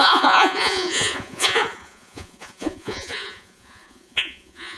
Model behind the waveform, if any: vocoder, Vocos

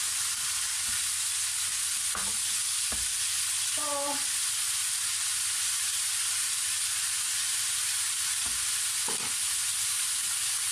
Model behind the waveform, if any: none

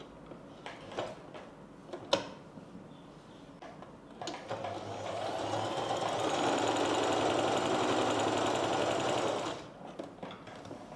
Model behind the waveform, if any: none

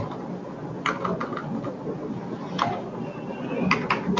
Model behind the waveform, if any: none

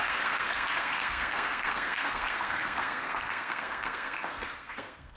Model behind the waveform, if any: codec, SNAC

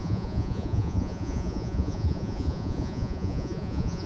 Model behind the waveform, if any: vocoder, Vocos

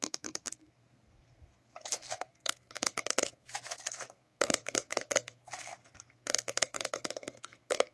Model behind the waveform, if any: codec, SNAC